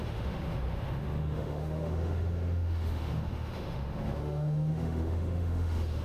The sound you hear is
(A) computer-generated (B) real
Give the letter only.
A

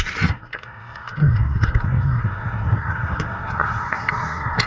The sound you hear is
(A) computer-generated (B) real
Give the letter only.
A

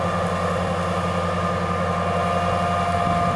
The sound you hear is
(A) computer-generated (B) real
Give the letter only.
B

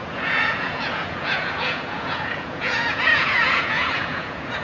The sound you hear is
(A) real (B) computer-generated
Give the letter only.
B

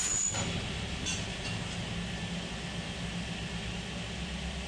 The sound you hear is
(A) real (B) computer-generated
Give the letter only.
A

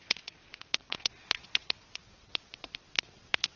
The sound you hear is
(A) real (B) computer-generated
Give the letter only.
B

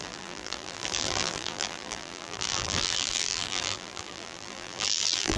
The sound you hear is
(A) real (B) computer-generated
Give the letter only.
B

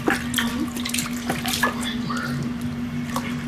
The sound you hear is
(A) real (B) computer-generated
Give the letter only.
A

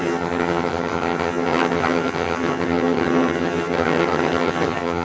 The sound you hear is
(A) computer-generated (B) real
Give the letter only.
A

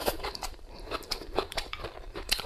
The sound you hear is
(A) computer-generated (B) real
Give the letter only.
A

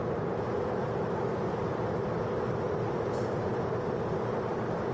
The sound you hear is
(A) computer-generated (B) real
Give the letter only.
B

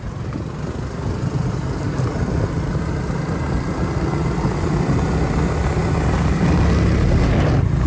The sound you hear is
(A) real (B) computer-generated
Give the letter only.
A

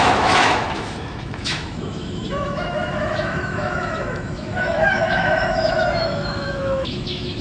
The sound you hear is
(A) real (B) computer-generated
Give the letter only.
B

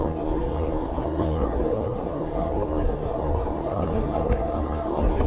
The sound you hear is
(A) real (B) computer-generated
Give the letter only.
B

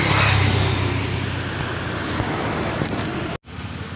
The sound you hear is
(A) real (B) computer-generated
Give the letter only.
A